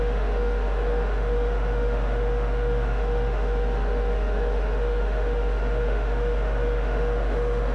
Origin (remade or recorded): remade